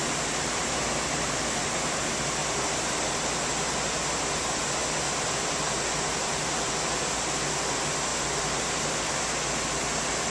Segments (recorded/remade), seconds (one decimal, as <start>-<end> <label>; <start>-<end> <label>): 0.0-2.0 remade; 2.0-2.4 recorded; 2.4-3.0 remade; 3.0-8.1 recorded; 8.1-8.7 remade; 8.7-10.3 recorded